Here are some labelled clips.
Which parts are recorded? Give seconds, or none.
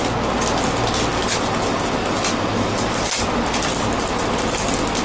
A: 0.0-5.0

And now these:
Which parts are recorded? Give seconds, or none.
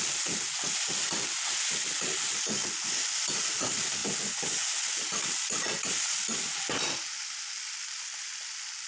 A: 0.0-8.9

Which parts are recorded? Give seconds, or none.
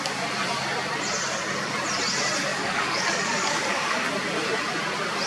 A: 0.0-2.5; 4.0-5.3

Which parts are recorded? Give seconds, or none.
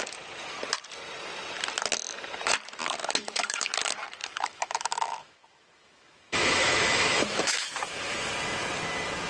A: 0.0-3.2; 3.7-4.2; 8.3-9.3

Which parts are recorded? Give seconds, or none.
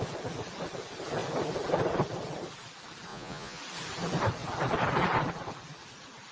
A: 0.0-3.1; 3.6-6.3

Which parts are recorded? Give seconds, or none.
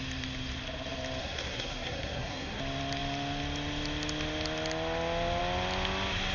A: 0.0-1.2; 2.6-6.3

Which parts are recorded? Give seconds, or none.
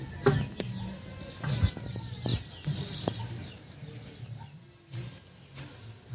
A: 0.0-6.1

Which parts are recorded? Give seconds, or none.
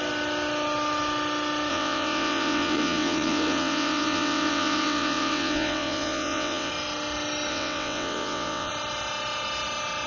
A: 0.0-1.7; 6.7-7.5; 8.7-10.1